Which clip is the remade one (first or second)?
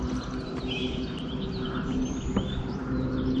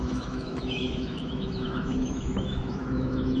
second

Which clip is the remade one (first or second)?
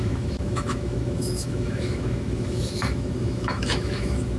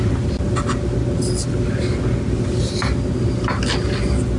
first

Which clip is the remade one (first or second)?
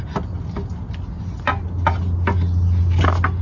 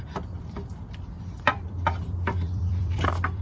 second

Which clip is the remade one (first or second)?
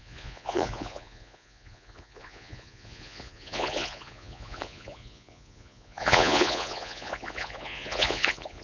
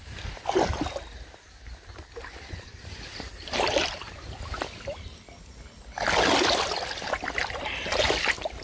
first